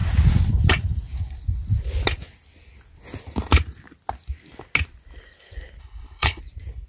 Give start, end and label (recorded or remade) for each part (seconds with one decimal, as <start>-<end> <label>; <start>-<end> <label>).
0.0-5.8 recorded; 5.8-6.4 remade; 6.4-6.9 recorded